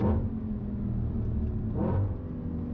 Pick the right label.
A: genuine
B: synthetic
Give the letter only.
A